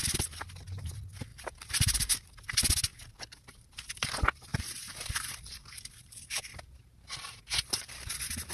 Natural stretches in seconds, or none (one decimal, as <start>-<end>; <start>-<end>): 0.0-1.3; 2.1-2.9; 4.0-4.5